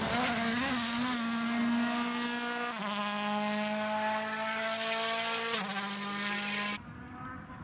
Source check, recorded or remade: recorded